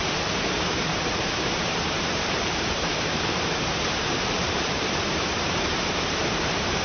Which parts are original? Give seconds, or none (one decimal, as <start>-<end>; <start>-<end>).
none